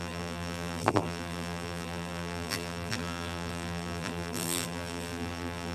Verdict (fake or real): fake